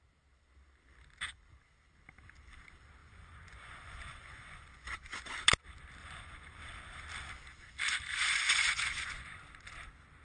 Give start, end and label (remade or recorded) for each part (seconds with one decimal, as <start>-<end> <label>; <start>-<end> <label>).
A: 0.0-3.0 recorded; 3.0-5.3 remade; 5.3-6.0 recorded; 6.0-6.6 remade; 6.6-8.2 recorded; 8.2-9.4 remade; 9.4-10.2 recorded